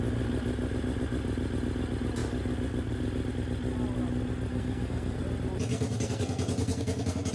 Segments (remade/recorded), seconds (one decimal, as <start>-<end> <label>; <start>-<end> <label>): 0.0-4.5 recorded; 4.5-5.2 remade; 5.2-5.7 recorded; 5.7-7.3 remade